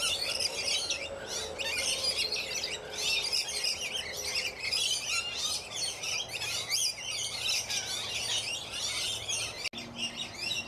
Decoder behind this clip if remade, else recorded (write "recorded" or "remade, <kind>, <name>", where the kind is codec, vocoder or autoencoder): recorded